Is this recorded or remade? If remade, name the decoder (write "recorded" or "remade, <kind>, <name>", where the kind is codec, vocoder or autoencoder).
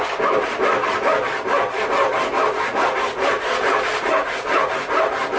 recorded